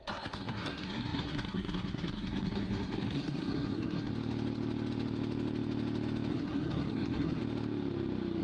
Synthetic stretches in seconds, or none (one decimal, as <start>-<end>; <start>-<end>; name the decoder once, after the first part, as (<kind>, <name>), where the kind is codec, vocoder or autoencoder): 0.0-4.1 (codec, SNAC); 6.3-7.4